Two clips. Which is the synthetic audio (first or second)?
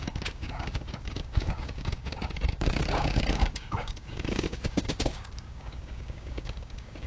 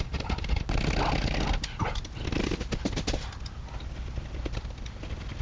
first